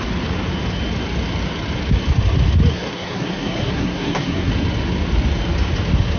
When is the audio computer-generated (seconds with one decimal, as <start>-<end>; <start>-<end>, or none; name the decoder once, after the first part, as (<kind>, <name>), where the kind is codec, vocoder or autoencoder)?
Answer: 2.7-4.5 (codec, SNAC)